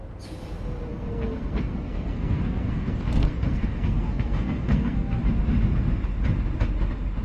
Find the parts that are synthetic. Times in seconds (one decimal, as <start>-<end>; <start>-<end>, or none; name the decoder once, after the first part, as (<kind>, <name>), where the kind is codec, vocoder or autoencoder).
0.9-5.2 (codec, SNAC)